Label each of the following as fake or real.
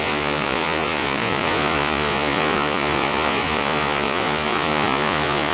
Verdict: fake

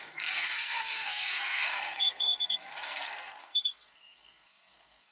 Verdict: fake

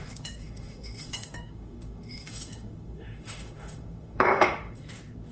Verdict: fake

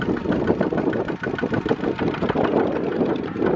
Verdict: real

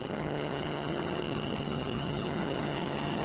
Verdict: fake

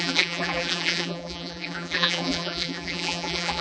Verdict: fake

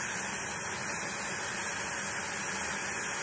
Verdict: real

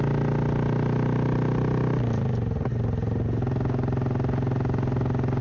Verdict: real